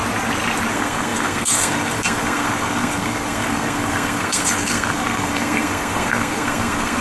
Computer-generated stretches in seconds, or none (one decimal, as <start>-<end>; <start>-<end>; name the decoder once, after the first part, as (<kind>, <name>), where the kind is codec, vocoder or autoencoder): 0.7-7.0 (codec, SNAC)